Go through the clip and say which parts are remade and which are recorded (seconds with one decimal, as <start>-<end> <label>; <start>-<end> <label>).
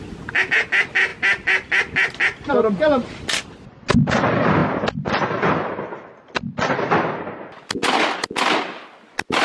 0.0-9.4 recorded